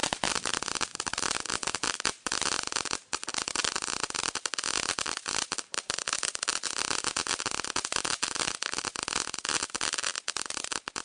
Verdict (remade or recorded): recorded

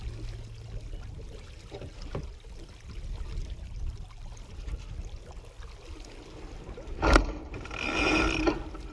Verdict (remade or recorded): recorded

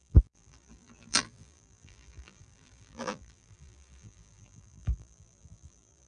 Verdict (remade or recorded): remade